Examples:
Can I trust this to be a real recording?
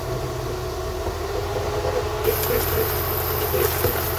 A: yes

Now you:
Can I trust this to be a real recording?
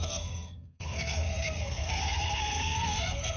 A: no